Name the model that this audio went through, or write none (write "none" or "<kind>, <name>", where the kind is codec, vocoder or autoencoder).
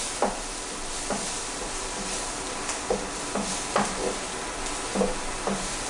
none